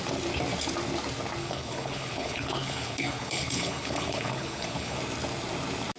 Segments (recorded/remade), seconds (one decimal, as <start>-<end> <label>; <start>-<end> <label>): 0.0-1.4 recorded; 1.4-5.0 remade; 5.0-6.0 recorded